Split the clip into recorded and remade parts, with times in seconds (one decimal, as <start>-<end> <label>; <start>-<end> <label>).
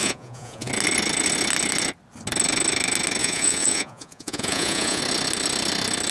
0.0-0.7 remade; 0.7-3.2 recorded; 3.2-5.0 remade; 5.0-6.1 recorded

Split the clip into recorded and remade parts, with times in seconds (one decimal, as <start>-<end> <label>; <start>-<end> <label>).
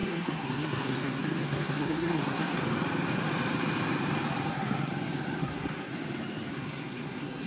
0.0-2.6 remade; 2.6-4.5 recorded; 4.5-4.9 remade; 4.9-5.4 recorded; 5.4-5.9 remade; 5.9-6.5 recorded; 6.5-7.5 remade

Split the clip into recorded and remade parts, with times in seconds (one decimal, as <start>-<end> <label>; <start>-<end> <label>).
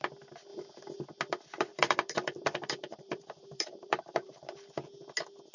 0.0-1.7 recorded; 1.7-4.5 remade; 4.5-5.5 recorded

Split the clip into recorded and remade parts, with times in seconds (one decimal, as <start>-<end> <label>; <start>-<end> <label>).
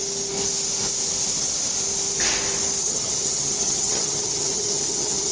0.0-2.8 recorded; 2.8-5.3 remade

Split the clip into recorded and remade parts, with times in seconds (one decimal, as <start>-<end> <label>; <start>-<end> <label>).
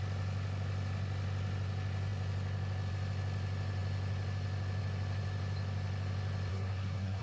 0.0-6.5 recorded; 6.5-7.2 remade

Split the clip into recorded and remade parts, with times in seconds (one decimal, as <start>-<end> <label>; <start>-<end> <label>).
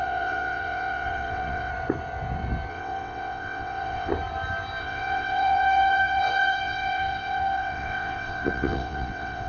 0.0-1.7 remade; 1.7-2.7 recorded; 2.7-4.1 remade; 4.1-4.8 recorded; 4.8-9.5 remade